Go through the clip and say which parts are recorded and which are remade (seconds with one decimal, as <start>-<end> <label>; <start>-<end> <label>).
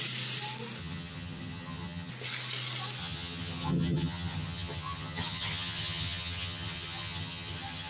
0.0-0.8 recorded; 0.8-2.1 remade; 2.1-3.0 recorded; 3.0-7.9 remade